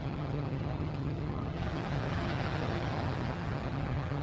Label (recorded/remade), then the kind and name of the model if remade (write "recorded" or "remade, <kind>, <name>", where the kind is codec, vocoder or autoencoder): remade, vocoder, HiFi-GAN